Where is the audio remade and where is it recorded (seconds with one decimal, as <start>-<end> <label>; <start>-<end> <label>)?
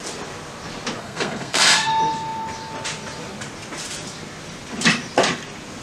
0.0-1.0 recorded; 1.0-1.9 remade; 1.9-5.8 recorded